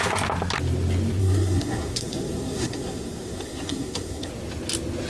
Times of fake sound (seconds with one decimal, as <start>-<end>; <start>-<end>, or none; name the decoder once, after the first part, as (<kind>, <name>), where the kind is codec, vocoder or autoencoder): 1.2-4.3 (codec, SNAC)